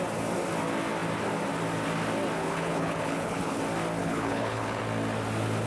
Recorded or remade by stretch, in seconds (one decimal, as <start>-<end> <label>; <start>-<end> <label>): 0.0-2.4 recorded; 2.4-3.6 remade; 3.6-4.0 recorded; 4.0-4.8 remade; 4.8-5.7 recorded